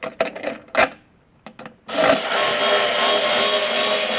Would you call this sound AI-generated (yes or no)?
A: no